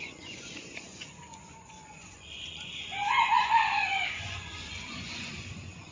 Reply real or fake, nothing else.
fake